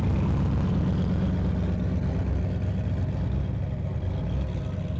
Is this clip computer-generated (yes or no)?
no